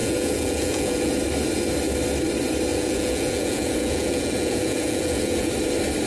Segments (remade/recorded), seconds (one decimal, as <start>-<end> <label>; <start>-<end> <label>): 0.0-1.1 remade; 1.1-2.7 recorded; 2.7-5.5 remade; 5.5-6.1 recorded